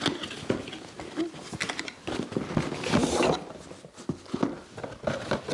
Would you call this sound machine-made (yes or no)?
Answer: no